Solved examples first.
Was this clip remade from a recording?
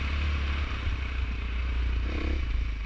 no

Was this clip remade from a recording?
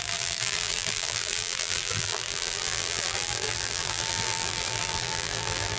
yes